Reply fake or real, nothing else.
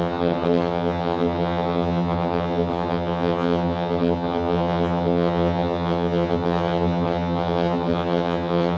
fake